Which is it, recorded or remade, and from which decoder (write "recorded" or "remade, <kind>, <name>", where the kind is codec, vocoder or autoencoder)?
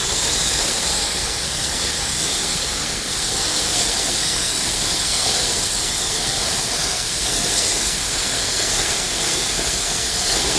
remade, codec, SNAC